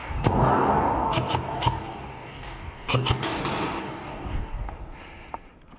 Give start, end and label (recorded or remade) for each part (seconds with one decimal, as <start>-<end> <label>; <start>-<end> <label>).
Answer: 0.0-3.4 remade; 3.4-3.8 recorded; 3.8-4.7 remade; 4.7-5.8 recorded